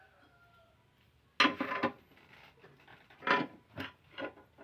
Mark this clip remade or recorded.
recorded